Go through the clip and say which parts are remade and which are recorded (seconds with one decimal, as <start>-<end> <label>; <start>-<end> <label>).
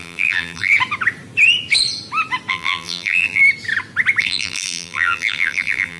0.0-0.7 remade; 0.7-2.5 recorded; 2.5-3.4 remade; 3.4-4.2 recorded; 4.2-6.0 remade